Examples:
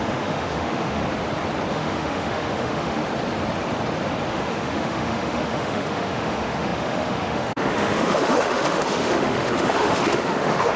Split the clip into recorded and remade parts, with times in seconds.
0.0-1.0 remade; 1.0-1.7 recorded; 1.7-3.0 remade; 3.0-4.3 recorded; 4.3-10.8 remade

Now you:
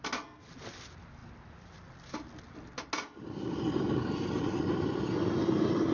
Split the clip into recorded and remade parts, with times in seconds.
0.0-5.9 recorded